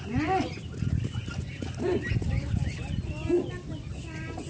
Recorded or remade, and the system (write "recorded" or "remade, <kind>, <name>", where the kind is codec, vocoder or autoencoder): recorded